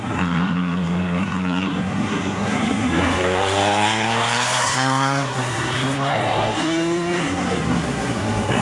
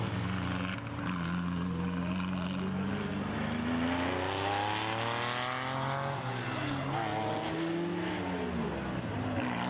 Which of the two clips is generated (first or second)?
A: first